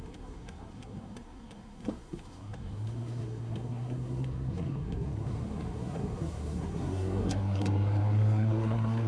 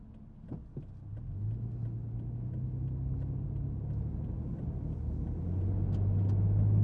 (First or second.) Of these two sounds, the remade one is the first